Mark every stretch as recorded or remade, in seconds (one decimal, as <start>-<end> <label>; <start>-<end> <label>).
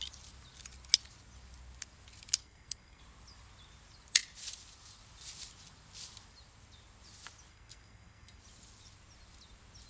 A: 0.0-2.4 recorded; 2.4-3.0 remade; 3.0-7.5 recorded; 7.5-8.4 remade; 8.4-9.9 recorded